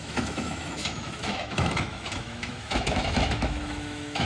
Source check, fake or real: fake